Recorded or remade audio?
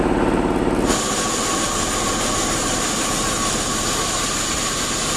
recorded